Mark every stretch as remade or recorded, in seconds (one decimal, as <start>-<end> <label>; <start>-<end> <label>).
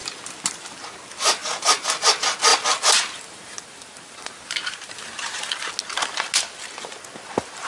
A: 0.0-1.4 recorded; 1.4-1.9 remade; 1.9-2.5 recorded; 2.5-5.7 remade; 5.7-7.7 recorded